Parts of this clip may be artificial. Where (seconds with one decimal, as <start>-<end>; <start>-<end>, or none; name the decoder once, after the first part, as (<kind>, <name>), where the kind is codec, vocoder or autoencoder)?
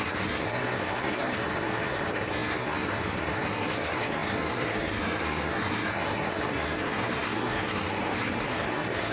0.0-9.1 (codec, SNAC)